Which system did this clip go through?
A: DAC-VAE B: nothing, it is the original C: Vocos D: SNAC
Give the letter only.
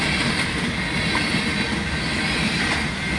B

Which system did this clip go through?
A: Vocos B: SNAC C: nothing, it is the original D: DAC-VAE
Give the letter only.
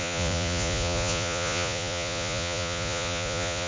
A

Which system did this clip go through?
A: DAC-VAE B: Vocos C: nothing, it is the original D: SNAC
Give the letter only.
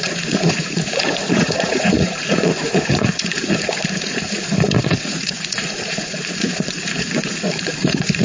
B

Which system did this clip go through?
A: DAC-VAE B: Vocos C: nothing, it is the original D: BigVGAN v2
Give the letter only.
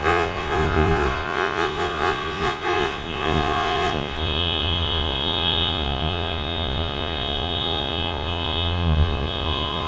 B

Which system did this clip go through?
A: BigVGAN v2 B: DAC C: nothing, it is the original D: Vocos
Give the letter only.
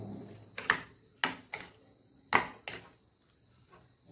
C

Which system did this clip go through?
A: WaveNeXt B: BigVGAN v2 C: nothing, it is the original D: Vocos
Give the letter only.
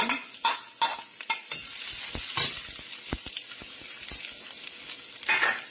C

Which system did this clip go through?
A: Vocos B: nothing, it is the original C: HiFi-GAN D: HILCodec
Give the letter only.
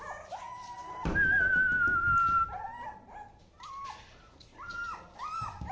B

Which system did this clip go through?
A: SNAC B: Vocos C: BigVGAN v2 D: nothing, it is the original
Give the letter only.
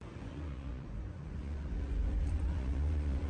B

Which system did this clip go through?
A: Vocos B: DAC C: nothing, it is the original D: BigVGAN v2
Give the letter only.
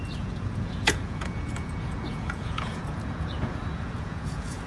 A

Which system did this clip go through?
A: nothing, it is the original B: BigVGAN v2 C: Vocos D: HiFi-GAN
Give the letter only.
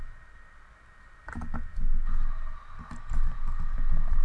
A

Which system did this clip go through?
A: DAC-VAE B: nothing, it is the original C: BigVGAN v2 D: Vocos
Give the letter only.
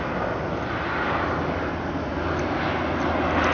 B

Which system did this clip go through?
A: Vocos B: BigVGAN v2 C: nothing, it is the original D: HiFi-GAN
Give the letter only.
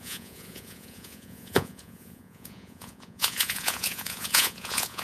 A